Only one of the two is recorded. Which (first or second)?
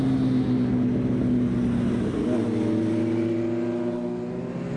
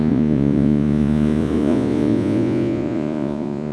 first